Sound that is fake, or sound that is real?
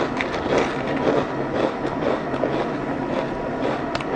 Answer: real